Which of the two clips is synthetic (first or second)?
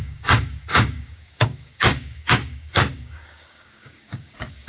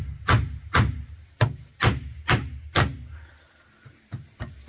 first